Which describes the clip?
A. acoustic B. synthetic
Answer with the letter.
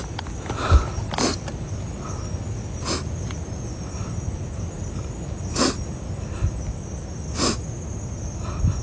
A